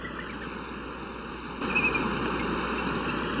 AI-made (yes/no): no